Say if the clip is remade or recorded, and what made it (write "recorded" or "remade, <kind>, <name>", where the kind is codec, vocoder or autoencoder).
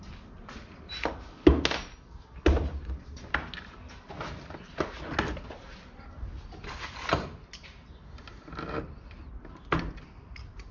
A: recorded